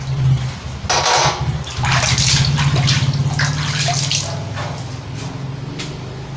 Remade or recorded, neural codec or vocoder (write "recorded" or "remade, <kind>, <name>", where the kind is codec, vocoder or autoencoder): recorded